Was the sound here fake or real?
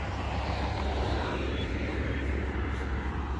real